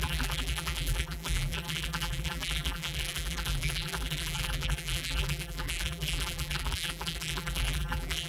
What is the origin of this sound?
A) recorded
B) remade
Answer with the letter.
B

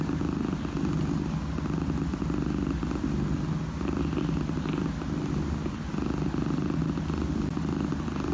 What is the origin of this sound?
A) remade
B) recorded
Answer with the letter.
B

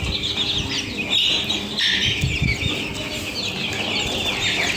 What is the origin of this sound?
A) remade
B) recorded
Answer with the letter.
B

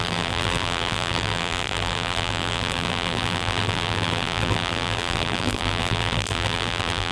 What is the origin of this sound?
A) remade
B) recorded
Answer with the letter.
A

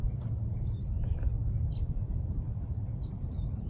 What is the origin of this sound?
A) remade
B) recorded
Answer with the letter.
B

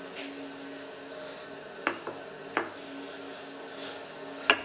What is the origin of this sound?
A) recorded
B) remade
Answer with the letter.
A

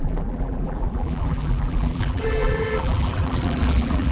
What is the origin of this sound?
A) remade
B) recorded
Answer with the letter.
A